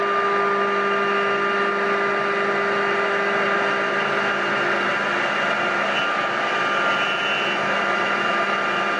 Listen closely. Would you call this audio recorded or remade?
recorded